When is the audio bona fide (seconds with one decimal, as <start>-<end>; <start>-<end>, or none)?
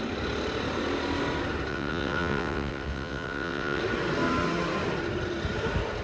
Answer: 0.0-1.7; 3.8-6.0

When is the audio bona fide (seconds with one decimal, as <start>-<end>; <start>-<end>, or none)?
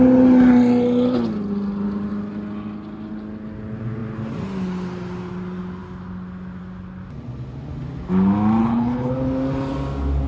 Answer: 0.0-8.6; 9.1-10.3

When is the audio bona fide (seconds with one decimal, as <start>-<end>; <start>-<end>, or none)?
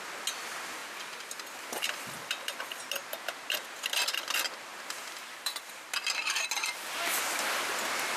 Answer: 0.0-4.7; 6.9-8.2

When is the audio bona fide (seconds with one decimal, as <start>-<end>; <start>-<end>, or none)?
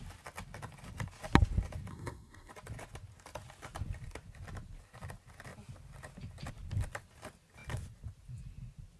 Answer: 0.0-1.9; 2.5-9.0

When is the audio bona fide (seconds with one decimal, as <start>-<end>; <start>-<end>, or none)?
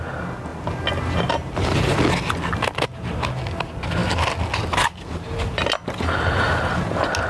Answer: 0.0-7.3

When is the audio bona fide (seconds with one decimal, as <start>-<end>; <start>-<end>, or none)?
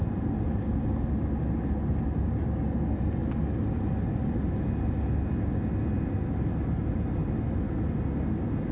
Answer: 0.0-8.7